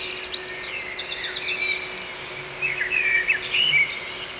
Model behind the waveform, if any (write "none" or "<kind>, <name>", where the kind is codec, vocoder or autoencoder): none